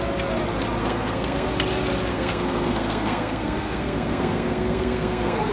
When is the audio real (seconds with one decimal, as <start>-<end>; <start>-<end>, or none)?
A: 0.0-0.8; 1.5-2.1